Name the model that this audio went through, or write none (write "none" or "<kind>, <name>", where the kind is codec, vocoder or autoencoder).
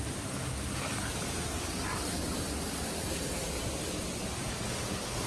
none